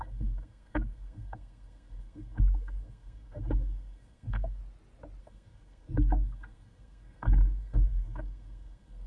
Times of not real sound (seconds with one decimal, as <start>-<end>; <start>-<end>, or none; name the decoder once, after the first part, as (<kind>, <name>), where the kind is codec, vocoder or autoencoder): 0.0-4.6 (codec, SNAC); 5.2-9.1